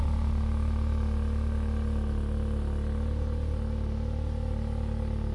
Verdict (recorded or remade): recorded